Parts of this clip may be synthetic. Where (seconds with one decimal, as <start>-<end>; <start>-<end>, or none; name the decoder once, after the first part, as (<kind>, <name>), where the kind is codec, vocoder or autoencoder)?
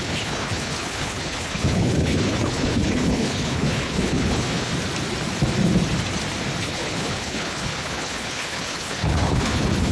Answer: 0.0-4.7 (codec, HILCodec); 6.6-9.9